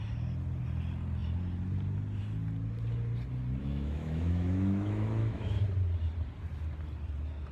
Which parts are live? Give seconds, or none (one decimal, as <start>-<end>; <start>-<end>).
0.0-3.6; 5.6-7.5